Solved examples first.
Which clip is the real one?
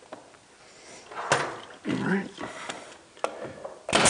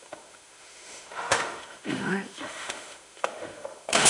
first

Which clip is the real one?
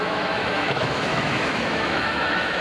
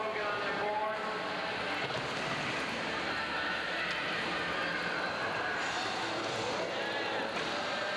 second